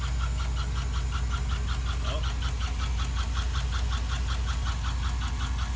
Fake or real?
real